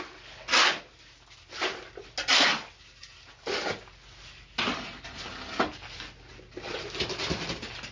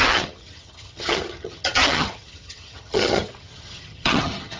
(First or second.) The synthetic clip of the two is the second